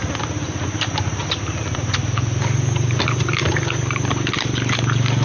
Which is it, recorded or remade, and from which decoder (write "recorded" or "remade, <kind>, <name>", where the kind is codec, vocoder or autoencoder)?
recorded